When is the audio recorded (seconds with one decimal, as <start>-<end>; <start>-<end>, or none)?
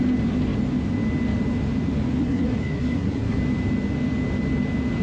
0.0-2.2; 3.4-5.0